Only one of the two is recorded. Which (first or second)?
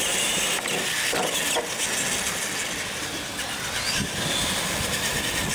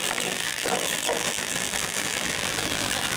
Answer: first